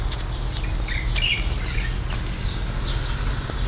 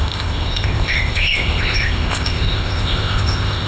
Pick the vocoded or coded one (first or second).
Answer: second